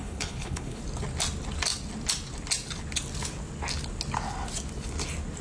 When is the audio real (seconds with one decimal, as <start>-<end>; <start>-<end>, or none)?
0.8-5.4